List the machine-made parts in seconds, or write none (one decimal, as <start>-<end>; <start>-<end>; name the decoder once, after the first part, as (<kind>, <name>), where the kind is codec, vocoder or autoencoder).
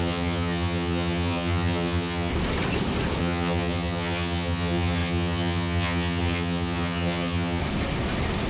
0.0-2.3 (vocoder, HiFi-GAN); 3.2-7.6